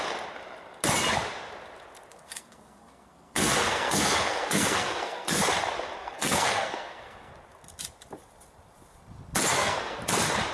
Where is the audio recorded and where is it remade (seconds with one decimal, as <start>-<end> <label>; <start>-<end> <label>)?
0.0-2.1 recorded; 2.1-5.4 remade; 5.4-6.0 recorded; 6.0-7.3 remade; 7.3-9.5 recorded; 9.5-10.0 remade; 10.0-10.5 recorded

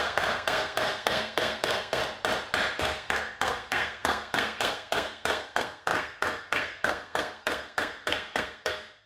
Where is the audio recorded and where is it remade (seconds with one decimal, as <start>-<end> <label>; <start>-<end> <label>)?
0.0-2.0 remade; 2.0-2.8 recorded; 2.8-9.1 remade

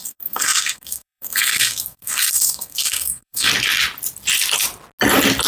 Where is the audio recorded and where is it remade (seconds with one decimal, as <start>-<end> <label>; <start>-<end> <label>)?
0.0-3.5 remade; 3.5-5.5 recorded